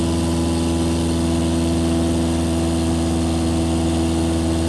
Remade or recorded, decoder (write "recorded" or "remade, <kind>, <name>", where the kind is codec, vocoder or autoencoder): recorded